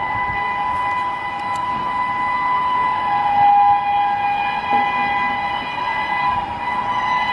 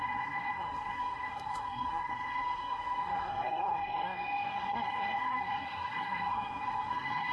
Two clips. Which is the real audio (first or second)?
first